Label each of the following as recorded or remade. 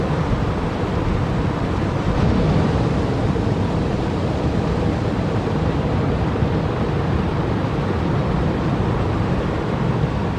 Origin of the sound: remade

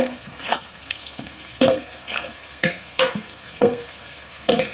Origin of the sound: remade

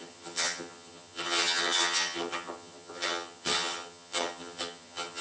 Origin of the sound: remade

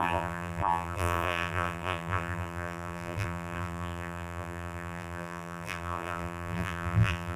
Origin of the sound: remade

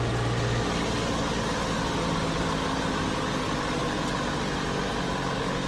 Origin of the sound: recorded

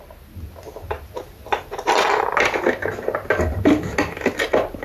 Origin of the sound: recorded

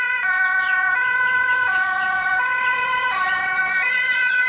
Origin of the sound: remade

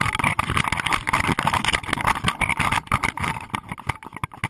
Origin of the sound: recorded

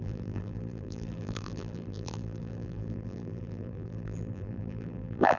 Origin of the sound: remade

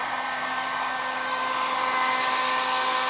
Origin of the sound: remade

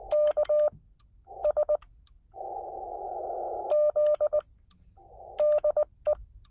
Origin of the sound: recorded